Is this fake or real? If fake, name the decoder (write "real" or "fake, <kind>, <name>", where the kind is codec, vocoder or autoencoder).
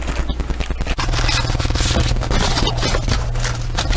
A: real